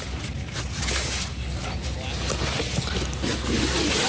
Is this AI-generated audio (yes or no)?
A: no